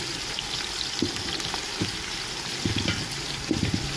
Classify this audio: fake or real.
real